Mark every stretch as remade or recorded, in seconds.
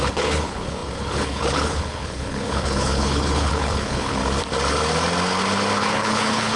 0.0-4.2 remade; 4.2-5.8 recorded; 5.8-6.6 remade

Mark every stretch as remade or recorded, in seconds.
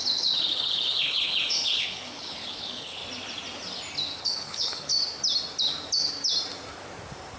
0.0-3.0 remade; 3.0-4.2 recorded; 4.2-4.9 remade; 4.9-7.4 recorded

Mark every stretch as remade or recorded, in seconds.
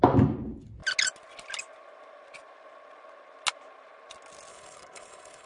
0.0-4.5 recorded; 4.5-5.5 remade